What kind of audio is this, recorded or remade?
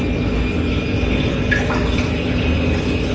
recorded